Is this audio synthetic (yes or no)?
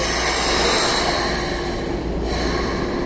no